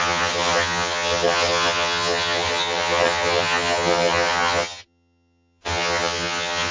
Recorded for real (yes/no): no